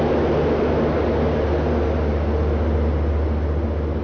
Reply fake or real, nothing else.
real